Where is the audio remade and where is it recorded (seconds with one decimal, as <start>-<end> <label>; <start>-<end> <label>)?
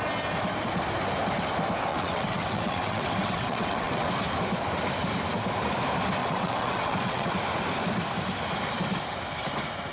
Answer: 0.0-1.9 recorded; 1.9-4.1 remade; 4.1-6.2 recorded; 6.2-7.3 remade; 7.3-9.9 recorded